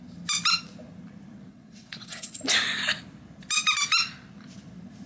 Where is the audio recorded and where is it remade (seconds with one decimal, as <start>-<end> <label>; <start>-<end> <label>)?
0.0-1.5 recorded; 1.5-2.4 remade; 2.4-5.1 recorded